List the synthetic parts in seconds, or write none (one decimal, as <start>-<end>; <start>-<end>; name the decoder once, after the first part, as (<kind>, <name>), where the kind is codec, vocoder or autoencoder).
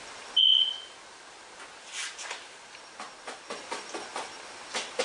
none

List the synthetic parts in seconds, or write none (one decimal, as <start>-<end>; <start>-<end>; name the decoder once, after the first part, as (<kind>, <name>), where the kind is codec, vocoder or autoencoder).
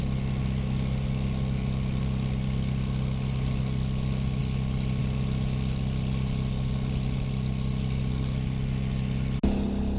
none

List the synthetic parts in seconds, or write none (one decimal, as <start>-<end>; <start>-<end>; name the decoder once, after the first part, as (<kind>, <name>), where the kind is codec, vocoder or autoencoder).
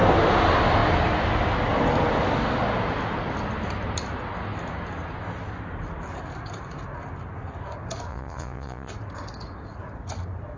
8.1-8.9 (vocoder, Vocos)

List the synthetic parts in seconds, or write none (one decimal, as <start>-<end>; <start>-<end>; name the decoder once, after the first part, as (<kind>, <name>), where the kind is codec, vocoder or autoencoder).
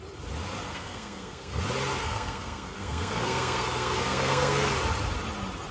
0.7-1.6 (codec, SNAC); 2.0-4.7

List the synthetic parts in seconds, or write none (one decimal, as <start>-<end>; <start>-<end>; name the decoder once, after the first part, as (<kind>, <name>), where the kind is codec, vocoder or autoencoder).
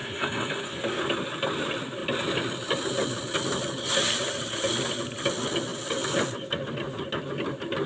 0.0-1.0 (codec, SNAC)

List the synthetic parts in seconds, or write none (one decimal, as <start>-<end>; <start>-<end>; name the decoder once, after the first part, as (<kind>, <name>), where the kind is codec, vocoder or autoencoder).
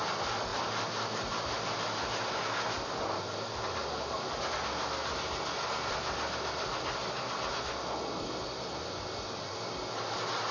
0.5-2.3 (vocoder, BigVGAN v2); 3.8-4.7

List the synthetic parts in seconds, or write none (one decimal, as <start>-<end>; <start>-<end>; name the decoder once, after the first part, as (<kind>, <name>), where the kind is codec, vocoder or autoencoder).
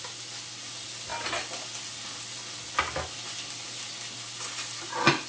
none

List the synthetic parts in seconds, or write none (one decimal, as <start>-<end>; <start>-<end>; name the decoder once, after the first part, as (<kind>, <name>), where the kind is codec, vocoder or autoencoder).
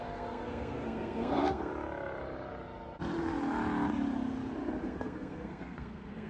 0.0-1.7 (codec, SNAC); 4.8-6.3